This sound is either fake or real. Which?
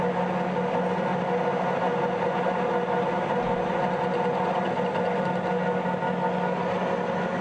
real